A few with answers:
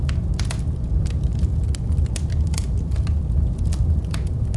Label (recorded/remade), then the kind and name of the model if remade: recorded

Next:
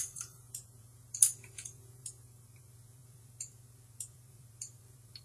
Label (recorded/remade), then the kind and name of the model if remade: remade, vocoder, BigVGAN v2